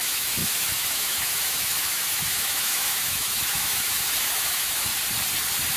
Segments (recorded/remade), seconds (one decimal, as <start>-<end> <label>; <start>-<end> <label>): 0.0-4.9 remade; 4.9-5.8 recorded